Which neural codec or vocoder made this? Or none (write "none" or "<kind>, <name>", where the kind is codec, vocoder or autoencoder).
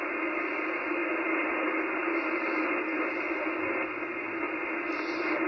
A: none